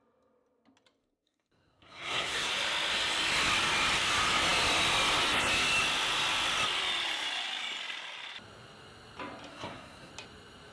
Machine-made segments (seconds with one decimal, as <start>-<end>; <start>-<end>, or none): 1.0-2.5; 9.5-10.1